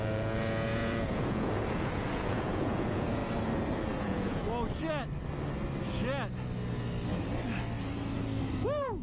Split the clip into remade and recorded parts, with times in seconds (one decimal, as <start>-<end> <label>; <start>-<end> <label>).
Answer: 0.0-3.2 remade; 3.2-4.0 recorded; 4.0-4.4 remade; 4.4-8.6 recorded; 8.6-9.0 remade